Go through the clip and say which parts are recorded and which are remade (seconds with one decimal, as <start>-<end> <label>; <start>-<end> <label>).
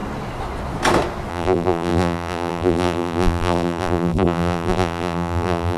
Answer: 0.0-1.3 recorded; 1.3-5.8 remade